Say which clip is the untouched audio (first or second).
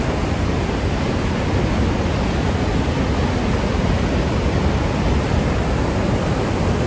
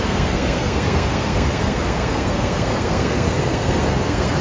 first